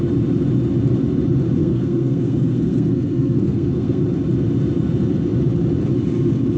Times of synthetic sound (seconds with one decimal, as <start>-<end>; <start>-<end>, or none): 1.6-4.0